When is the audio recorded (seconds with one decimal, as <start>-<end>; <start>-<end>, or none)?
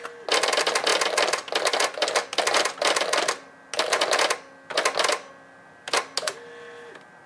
0.0-7.3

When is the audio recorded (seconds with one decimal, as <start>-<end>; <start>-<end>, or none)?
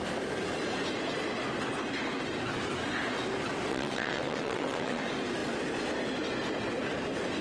0.0-3.7; 5.0-7.4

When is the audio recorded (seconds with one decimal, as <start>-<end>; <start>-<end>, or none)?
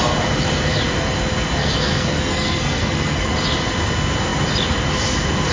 0.0-1.6; 3.3-5.5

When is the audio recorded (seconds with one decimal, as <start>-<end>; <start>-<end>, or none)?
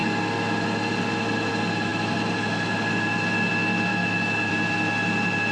0.0-3.9; 4.5-5.5